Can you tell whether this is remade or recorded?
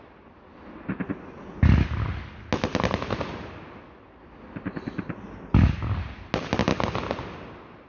recorded